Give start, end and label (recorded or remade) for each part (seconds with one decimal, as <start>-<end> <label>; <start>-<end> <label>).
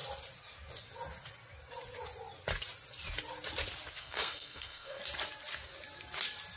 0.0-4.0 recorded; 4.0-5.0 remade; 5.0-6.6 recorded